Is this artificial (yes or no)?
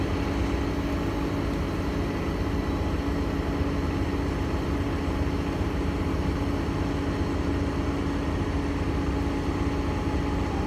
no